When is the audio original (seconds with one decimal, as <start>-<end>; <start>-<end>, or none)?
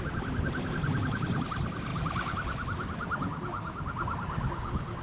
0.0-5.0